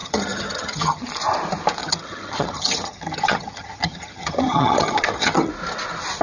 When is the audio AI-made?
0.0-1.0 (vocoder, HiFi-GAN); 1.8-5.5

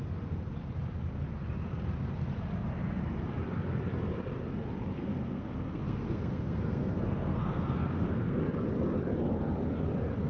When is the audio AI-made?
5.0-8.4 (codec, SNAC)

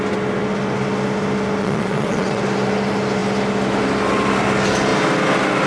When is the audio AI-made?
1.6-2.4 (vocoder, Vocos)

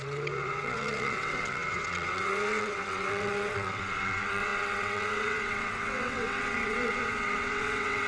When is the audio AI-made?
0.0-8.1 (vocoder, WaveNeXt)

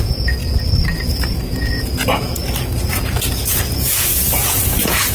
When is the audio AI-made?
0.0-0.4 (vocoder, Vocos); 1.1-2.4; 2.9-5.1

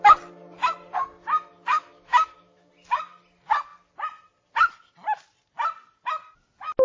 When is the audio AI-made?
1.7-2.7 (autoencoder, DAC-VAE)

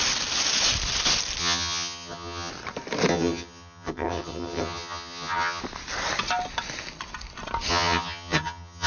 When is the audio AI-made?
1.4-2.5 (vocoder, HiFi-GAN); 3.1-5.6; 7.7-8.9